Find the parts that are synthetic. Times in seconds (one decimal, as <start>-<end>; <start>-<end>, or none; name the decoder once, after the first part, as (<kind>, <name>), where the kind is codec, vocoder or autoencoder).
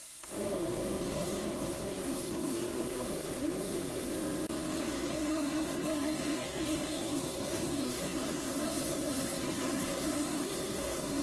0.0-4.1 (codec, SNAC); 4.8-11.2